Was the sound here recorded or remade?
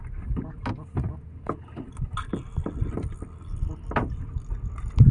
recorded